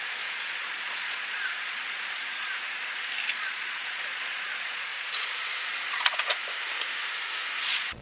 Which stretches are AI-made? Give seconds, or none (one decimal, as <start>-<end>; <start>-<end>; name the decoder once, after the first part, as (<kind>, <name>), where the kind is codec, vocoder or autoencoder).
0.0-2.5 (vocoder, Vocos); 3.3-6.4; 7.6-8.0